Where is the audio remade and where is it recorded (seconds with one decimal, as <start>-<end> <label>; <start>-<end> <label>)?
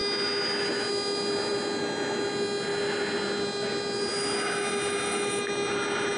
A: 0.0-6.2 recorded